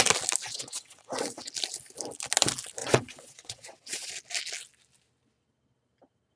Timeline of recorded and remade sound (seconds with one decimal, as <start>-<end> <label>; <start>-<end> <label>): 0.0-0.5 recorded; 0.5-1.5 remade; 1.5-2.8 recorded; 2.8-4.1 remade; 4.1-6.4 recorded